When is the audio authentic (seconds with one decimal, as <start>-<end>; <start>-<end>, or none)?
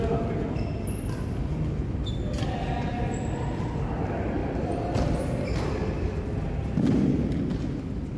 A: 0.0-4.4; 5.2-8.2